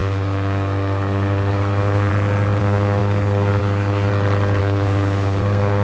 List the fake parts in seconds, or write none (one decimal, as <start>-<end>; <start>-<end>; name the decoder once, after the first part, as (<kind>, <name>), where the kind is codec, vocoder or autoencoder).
0.0-2.1 (codec, SNAC); 2.6-4.1; 4.6-5.8